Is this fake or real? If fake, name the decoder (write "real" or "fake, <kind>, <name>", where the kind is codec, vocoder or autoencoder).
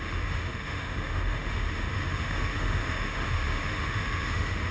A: fake, autoencoder, DAC-VAE